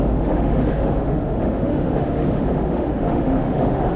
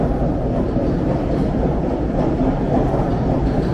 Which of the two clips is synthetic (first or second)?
first